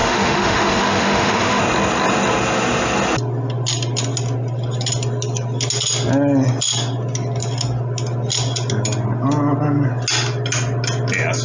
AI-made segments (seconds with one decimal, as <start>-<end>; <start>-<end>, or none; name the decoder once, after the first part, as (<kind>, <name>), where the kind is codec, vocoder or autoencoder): 0.0-1.6 (autoencoder, DAC-VAE)